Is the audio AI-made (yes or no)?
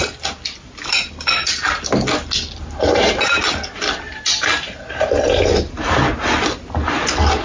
no